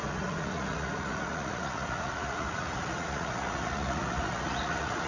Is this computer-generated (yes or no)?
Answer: yes